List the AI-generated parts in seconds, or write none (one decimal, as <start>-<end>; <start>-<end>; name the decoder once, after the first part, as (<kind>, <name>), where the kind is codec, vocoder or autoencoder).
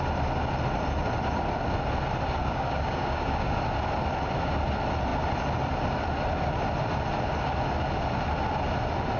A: 2.4-3.6 (codec, DAC)